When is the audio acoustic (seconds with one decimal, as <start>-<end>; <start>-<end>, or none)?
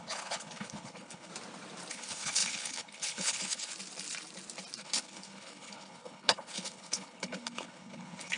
1.3-1.9; 3.7-4.8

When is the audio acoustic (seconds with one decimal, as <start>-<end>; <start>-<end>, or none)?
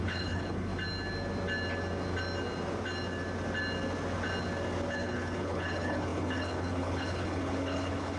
0.7-4.9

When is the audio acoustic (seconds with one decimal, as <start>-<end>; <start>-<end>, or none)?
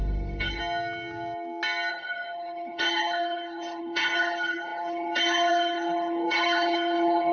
0.6-1.9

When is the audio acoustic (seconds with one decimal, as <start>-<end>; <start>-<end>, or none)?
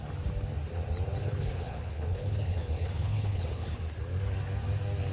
0.0-1.2; 3.8-5.1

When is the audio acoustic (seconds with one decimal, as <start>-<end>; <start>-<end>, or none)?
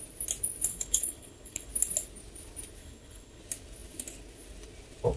0.0-0.7; 1.7-2.8; 3.4-5.2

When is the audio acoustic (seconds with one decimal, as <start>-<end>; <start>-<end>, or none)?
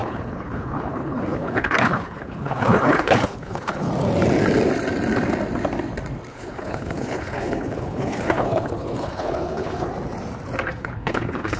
3.9-6.3; 9.9-10.8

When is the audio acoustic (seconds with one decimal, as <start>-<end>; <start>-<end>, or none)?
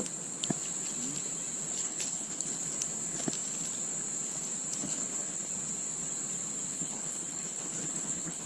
0.0-1.8; 2.5-4.8; 5.5-6.7